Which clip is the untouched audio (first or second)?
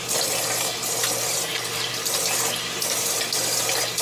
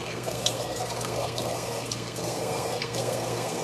first